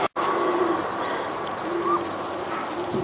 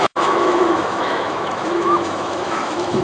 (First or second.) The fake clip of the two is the second